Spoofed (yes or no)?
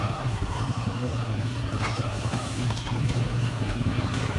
yes